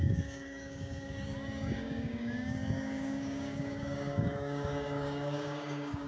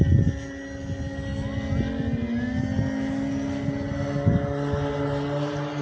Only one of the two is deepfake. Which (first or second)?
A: first